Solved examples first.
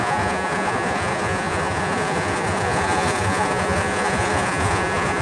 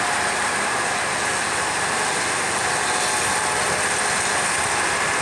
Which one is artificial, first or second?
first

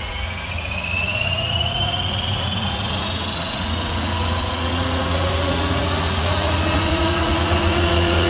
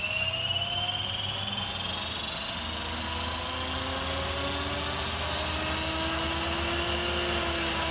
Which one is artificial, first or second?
first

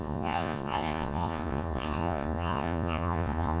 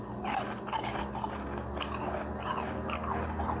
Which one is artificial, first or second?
first